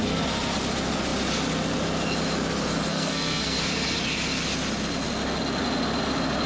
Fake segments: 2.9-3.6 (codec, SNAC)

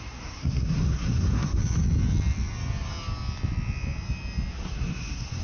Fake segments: 0.0-1.6 (codec, SNAC); 4.5-5.4